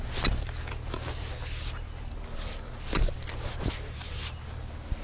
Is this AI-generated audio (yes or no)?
no